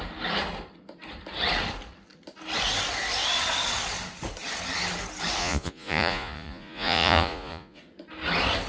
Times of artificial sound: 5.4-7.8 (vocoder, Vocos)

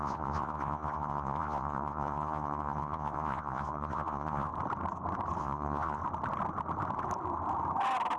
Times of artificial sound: 0.0-4.5 (vocoder, Vocos); 5.4-6.0